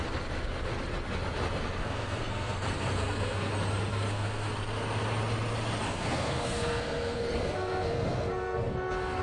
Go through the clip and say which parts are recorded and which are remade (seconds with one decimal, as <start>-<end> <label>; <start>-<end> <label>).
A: 0.0-1.8 recorded; 1.8-3.5 remade; 3.5-3.9 recorded; 3.9-4.5 remade; 4.5-5.9 recorded; 5.9-9.2 remade